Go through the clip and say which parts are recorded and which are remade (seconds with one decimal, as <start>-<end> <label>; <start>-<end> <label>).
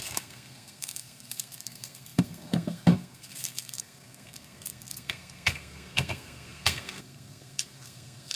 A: 0.0-8.4 remade